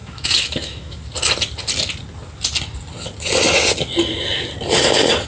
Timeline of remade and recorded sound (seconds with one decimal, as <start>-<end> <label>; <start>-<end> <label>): 0.0-1.0 remade; 1.0-5.3 recorded